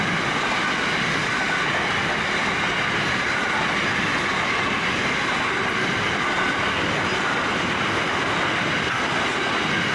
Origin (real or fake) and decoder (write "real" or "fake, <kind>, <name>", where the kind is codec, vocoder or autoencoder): real